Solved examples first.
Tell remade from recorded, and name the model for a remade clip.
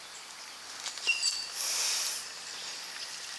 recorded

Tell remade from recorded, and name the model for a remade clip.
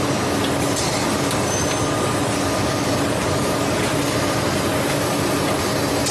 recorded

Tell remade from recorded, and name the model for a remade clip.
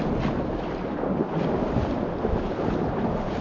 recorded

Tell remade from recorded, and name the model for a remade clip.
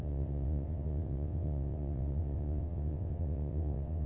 remade, vocoder, WaveNeXt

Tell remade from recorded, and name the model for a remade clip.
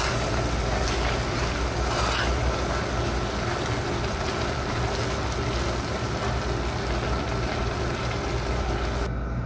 recorded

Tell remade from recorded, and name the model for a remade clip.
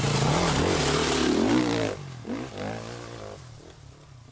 recorded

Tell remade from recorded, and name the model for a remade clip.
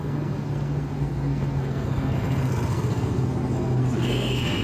remade, codec, SNAC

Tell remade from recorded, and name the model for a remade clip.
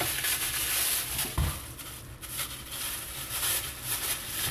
recorded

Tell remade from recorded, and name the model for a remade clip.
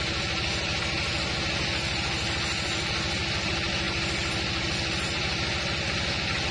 recorded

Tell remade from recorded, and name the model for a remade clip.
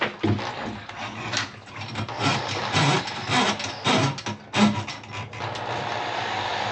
recorded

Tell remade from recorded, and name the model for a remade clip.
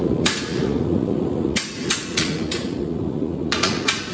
remade, vocoder, Vocos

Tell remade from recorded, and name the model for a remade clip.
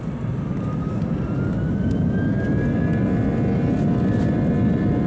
recorded